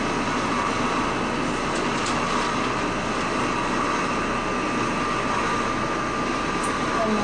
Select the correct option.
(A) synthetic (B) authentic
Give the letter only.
B